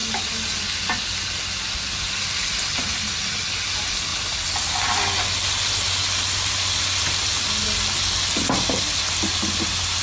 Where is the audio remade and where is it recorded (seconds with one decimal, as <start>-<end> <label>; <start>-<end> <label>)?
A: 0.0-10.0 recorded